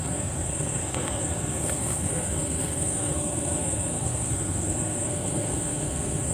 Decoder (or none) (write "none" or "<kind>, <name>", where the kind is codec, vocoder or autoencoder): codec, SNAC